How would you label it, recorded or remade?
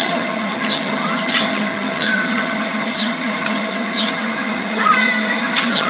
remade